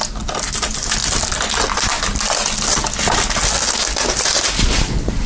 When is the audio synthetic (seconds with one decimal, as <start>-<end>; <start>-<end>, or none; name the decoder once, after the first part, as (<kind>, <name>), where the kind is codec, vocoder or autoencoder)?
none